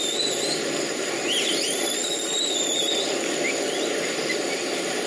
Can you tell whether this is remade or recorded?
remade